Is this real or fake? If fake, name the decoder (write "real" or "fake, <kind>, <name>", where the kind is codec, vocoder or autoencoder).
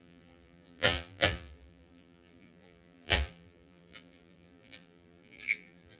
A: fake, vocoder, BigVGAN v2